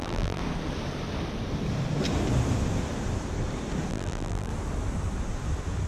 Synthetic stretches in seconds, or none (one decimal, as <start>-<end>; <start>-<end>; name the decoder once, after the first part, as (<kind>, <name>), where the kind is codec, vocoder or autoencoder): 0.0-0.4 (vocoder, BigVGAN v2); 3.9-4.5

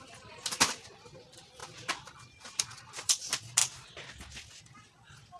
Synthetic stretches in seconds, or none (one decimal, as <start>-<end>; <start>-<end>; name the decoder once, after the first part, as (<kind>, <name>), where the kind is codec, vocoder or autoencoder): none

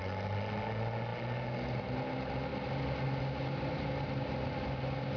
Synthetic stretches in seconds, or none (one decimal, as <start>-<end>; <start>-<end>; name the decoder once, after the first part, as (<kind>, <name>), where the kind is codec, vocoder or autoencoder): none